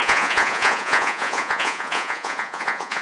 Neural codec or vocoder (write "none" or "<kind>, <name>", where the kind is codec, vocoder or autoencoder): vocoder, Vocos